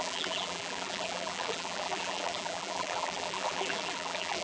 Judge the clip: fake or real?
fake